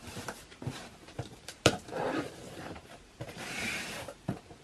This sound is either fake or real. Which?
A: fake